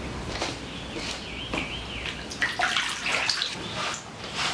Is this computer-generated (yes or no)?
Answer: no